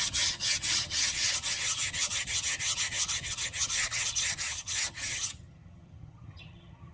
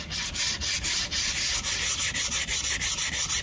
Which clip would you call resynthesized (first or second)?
first